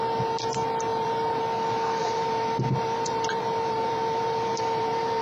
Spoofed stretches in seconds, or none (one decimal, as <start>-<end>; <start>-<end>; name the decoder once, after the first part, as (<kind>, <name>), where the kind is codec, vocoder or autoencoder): 0.9-1.4 (vocoder, BigVGAN v2); 2.0-5.2